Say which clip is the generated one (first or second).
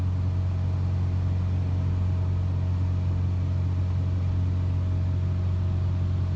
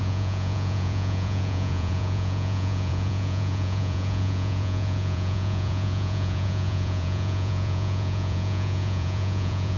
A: second